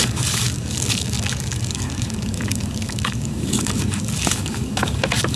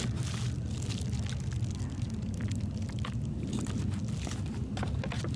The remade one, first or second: first